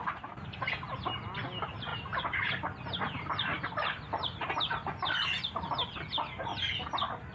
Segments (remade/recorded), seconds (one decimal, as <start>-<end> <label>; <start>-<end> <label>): 0.0-7.3 recorded